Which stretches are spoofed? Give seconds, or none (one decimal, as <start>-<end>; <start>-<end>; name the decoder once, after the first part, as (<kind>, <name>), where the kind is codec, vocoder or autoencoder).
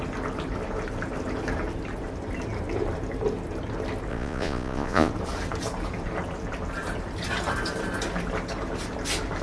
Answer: 4.1-5.1 (vocoder, Vocos)